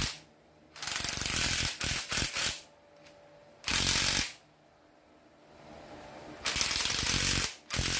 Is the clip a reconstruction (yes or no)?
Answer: no